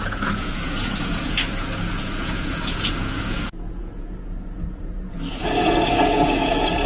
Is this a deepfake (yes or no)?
yes